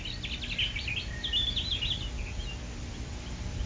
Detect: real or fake real